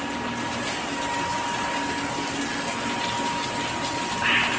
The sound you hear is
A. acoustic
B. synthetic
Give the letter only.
A